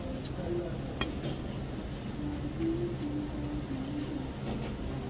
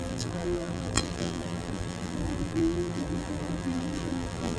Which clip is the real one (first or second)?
first